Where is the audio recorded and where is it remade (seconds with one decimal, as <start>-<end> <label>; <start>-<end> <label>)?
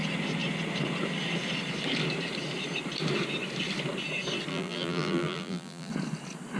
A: 0.0-4.5 recorded; 4.5-5.9 remade; 5.9-6.6 recorded